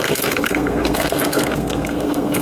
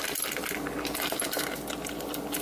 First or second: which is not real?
first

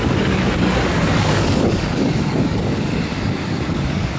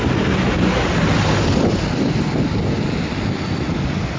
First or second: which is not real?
first